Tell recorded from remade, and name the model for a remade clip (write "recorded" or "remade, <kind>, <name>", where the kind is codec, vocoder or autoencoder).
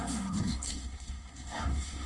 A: remade, codec, SNAC